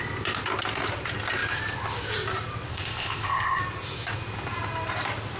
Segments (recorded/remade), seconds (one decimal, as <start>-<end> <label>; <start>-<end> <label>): 0.0-2.7 recorded; 2.7-3.6 remade; 3.6-5.4 recorded